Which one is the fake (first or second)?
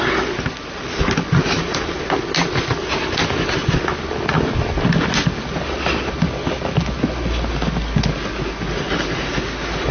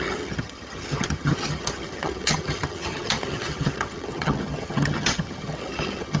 second